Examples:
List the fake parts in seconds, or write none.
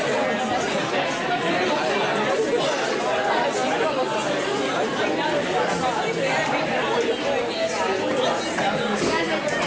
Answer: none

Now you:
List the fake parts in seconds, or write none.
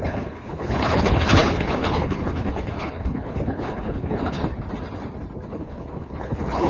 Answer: 0.0-4.4 (codec, HILCodec); 5.5-6.7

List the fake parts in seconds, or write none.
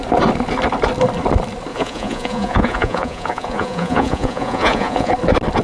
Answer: 1.7-5.1 (vocoder, Vocos)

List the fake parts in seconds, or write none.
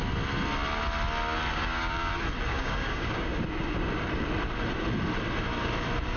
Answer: 1.5-2.1 (codec, DAC); 2.5-3.3